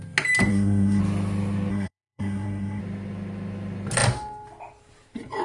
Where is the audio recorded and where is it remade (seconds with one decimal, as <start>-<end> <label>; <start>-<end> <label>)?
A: 0.0-0.5 recorded; 0.5-1.0 remade; 1.0-1.7 recorded; 1.7-2.8 remade; 2.8-5.4 recorded